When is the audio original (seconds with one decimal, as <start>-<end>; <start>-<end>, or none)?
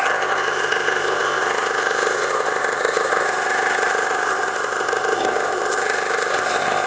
none